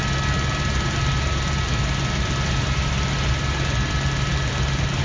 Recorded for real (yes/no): yes